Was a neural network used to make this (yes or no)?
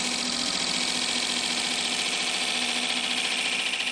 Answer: no